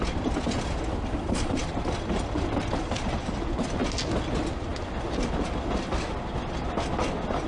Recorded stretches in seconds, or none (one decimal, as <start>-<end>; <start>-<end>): 0.0-7.5